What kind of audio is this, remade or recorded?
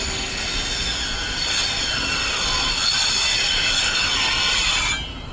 recorded